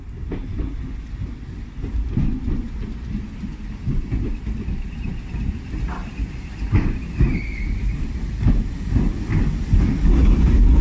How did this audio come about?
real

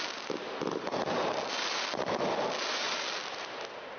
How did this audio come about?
real